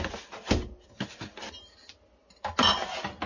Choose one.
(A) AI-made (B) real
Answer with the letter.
B